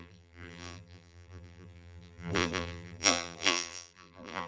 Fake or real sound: fake